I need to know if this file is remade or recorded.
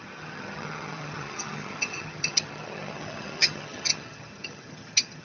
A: remade